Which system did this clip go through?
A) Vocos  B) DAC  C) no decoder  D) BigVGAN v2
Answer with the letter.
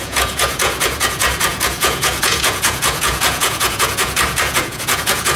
A